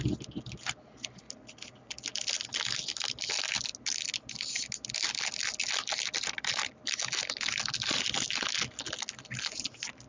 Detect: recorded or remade recorded